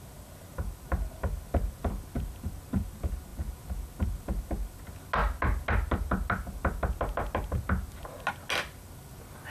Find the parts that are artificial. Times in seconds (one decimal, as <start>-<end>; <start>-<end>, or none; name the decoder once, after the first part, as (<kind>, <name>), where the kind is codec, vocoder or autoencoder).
none